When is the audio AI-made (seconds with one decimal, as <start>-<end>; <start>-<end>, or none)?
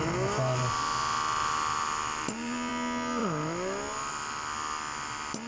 none